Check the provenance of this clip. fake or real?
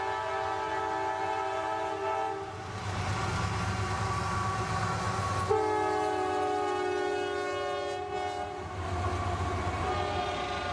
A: real